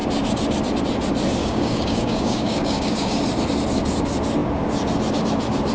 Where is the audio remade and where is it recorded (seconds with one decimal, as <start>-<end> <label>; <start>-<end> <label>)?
0.0-1.4 recorded; 1.4-3.2 remade; 3.2-5.7 recorded

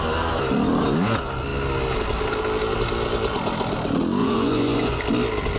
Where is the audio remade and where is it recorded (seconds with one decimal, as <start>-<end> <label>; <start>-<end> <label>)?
0.0-4.2 recorded; 4.2-5.0 remade; 5.0-5.6 recorded

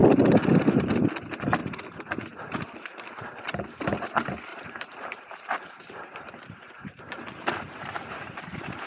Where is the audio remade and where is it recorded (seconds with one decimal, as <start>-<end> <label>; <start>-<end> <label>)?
0.0-1.6 recorded; 1.6-3.4 remade; 3.4-4.5 recorded; 4.5-8.9 remade

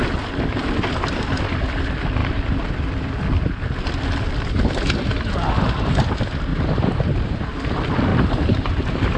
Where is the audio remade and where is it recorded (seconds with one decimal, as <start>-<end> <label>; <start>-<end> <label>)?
0.0-6.5 recorded; 6.5-7.5 remade; 7.5-8.1 recorded; 8.1-9.2 remade

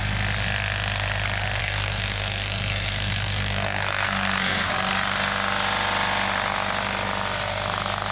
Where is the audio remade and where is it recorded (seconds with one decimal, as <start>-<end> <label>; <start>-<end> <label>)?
0.0-1.6 recorded; 1.6-4.7 remade; 4.7-8.1 recorded

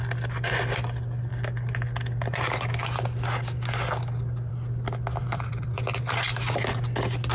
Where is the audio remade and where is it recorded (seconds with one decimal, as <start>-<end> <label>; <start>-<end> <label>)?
0.0-5.2 recorded; 5.2-5.8 remade; 5.8-7.3 recorded

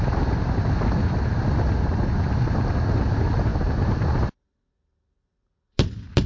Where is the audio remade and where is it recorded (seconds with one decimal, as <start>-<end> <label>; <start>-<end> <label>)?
0.0-6.3 recorded

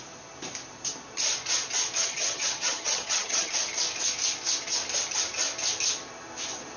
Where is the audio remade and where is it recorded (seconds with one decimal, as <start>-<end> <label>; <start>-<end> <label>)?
0.0-2.0 recorded; 2.0-3.5 remade; 3.5-6.8 recorded